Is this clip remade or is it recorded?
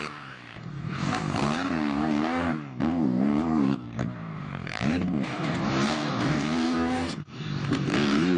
remade